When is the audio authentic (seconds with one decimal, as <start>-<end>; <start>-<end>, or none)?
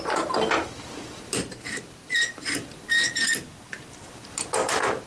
0.0-5.1